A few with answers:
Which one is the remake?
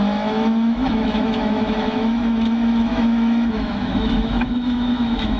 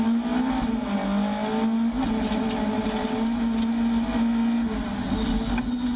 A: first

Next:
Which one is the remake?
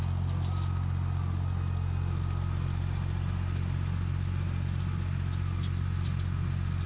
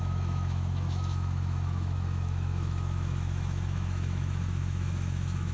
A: second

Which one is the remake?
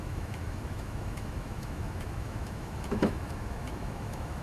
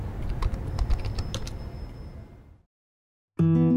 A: first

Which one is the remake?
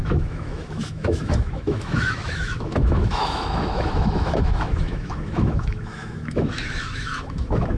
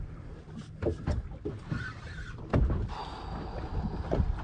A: first